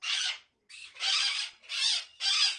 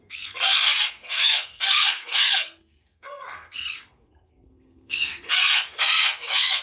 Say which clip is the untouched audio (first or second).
first